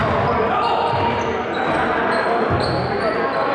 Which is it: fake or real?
real